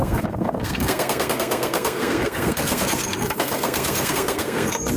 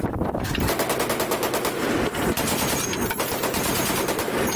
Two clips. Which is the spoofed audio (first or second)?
first